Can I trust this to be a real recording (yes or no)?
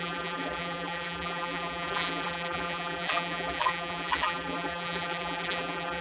no